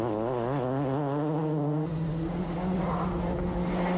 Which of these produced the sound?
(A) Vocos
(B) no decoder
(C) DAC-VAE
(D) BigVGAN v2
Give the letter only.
B